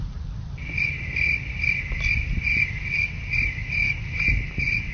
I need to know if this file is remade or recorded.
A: recorded